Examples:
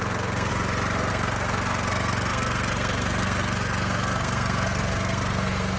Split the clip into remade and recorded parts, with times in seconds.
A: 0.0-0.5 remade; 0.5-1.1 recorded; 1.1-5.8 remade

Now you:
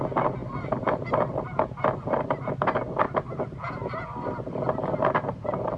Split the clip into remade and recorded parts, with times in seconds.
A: 0.0-5.8 recorded